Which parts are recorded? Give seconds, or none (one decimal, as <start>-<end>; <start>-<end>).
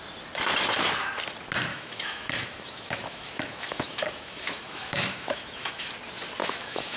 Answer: 0.0-1.7; 5.9-6.4